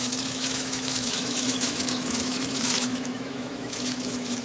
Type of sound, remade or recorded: remade